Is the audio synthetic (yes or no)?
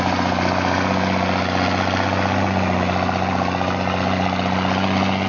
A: no